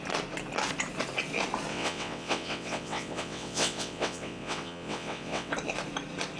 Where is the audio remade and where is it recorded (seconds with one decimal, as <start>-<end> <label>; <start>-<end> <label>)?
0.0-1.7 recorded; 1.7-5.5 remade; 5.5-6.4 recorded